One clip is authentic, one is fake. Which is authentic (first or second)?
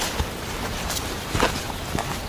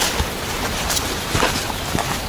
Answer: first